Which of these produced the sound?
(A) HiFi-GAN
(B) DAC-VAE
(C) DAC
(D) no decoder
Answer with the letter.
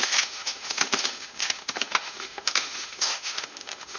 B